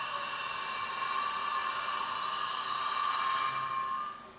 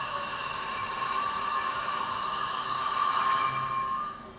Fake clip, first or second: second